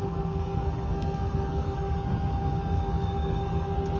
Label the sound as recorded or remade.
remade